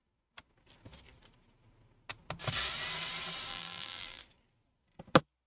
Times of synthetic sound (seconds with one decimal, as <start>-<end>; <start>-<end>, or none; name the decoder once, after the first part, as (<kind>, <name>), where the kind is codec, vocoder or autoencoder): 3.5-4.2 (vocoder, BigVGAN v2)